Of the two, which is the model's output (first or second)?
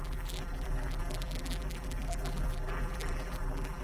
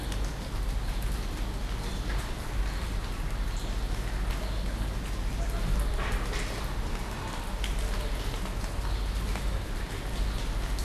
first